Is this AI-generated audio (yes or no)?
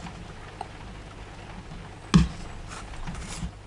no